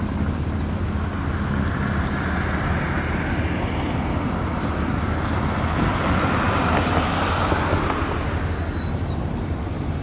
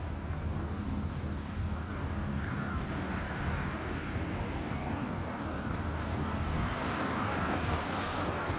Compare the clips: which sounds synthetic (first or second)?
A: second